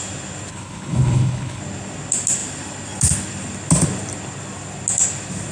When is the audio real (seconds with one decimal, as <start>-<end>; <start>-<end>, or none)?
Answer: 0.0-0.5; 1.6-5.5